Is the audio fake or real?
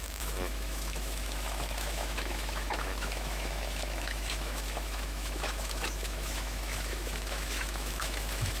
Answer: fake